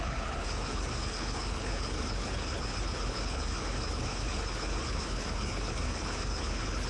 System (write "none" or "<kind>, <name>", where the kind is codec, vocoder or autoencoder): codec, HILCodec